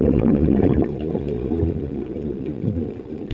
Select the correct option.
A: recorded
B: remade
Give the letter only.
B